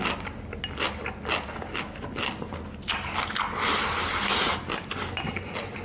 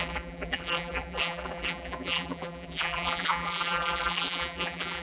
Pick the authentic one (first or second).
first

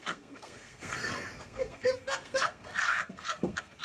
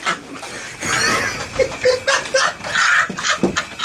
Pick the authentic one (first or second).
second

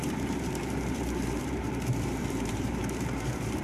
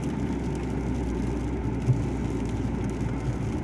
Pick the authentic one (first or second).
second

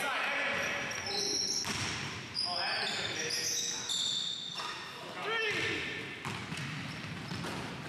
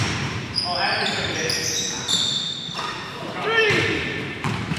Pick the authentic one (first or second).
first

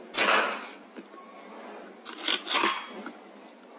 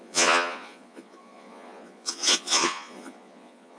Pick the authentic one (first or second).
first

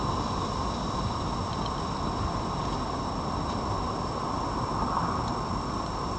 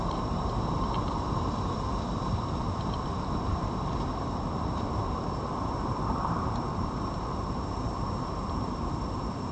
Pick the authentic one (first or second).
first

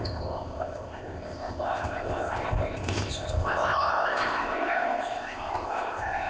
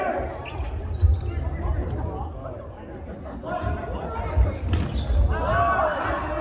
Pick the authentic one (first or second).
second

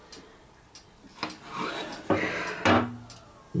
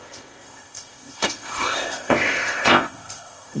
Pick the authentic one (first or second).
first